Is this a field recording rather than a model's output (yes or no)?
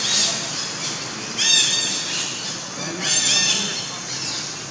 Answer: yes